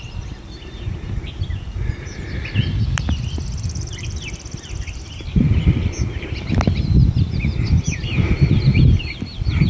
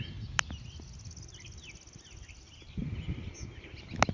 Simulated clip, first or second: first